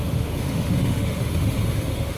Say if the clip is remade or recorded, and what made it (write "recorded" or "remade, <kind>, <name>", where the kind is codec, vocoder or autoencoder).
remade, autoencoder, DAC-VAE